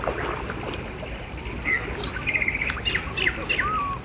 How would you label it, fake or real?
real